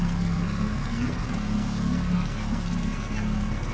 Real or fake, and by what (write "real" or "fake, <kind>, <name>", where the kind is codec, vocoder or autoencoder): fake, codec, SNAC